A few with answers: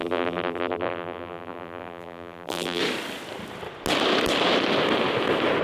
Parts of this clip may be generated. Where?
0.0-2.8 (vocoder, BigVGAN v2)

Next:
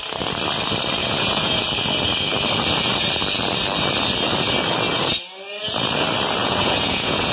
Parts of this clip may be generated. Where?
1.0-1.6 (vocoder, Vocos); 6.4-7.3

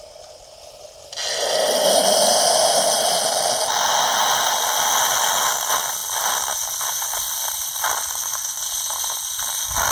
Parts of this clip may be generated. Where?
none

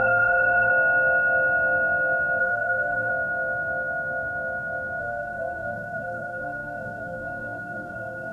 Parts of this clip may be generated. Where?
0.0-0.7 (codec, SNAC); 2.4-3.1; 5.0-8.3

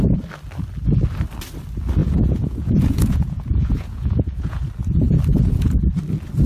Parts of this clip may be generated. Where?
2.0-4.6 (vocoder, Vocos); 5.3-5.8

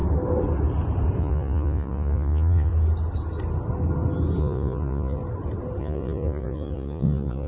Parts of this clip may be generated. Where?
1.2-2.7 (vocoder, Vocos); 4.4-5.2; 5.8-7.5

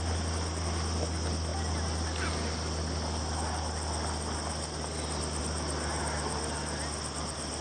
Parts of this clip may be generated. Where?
none

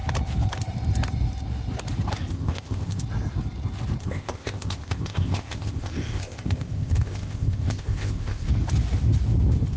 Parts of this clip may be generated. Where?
2.3-3.0 (codec, ZipCodec); 4.0-8.5